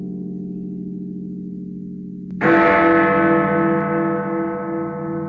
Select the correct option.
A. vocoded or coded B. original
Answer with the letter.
B